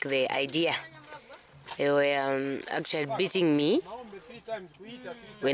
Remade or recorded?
recorded